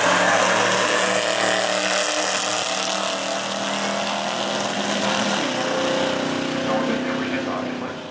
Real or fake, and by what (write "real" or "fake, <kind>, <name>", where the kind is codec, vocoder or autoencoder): real